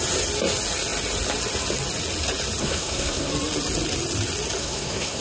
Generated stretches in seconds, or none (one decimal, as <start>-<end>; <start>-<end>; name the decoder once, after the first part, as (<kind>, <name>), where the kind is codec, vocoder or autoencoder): 2.6-3.3 (codec, SNAC); 4.6-5.2